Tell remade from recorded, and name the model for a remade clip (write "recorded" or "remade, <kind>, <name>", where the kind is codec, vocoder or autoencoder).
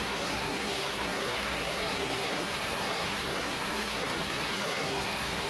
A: remade, codec, SNAC